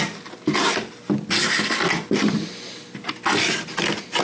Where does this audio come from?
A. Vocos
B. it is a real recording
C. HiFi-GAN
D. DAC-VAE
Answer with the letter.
B